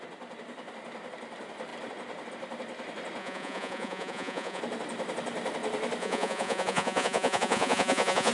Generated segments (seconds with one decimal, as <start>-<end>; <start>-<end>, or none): 3.2-4.6; 6.0-8.3